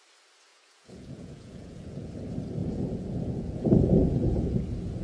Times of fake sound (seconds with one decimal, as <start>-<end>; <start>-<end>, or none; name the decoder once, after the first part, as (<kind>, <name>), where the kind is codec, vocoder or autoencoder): 0.5-2.1 (vocoder, Vocos); 2.6-4.6